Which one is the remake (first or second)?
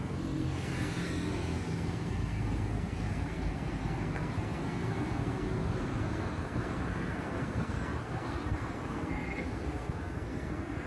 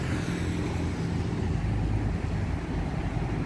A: first